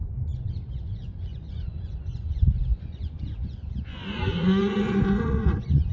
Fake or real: fake